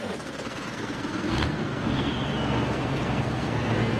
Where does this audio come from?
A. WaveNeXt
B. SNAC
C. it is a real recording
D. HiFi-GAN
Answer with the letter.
B